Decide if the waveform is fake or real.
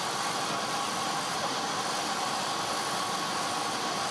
real